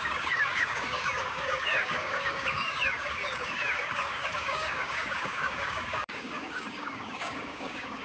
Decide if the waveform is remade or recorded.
remade